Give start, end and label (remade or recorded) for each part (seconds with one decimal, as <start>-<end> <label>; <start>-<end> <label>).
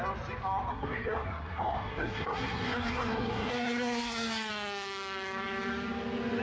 0.0-0.7 recorded; 0.7-4.5 remade; 4.5-6.4 recorded